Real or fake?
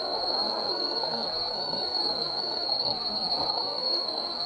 fake